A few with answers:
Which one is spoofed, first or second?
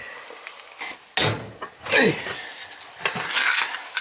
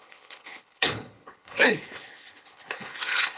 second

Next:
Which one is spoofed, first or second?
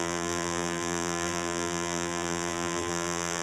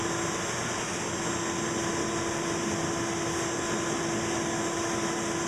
first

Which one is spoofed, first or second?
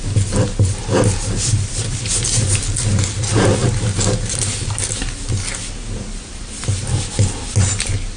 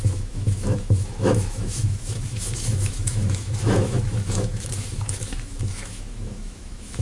second